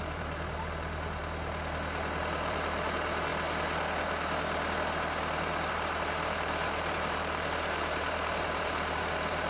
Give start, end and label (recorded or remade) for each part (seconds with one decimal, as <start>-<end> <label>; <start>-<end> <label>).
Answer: 0.0-1.2 remade; 1.2-2.2 recorded; 2.2-3.3 remade; 3.3-5.7 recorded; 5.7-9.5 remade